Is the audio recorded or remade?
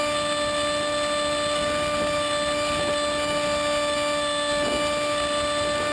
recorded